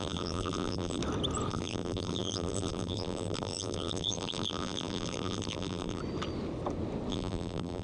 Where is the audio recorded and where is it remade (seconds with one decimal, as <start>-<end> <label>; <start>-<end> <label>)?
0.0-1.0 remade; 1.0-1.5 recorded; 1.5-6.0 remade; 6.0-7.1 recorded; 7.1-7.8 remade